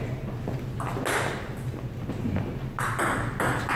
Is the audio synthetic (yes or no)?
no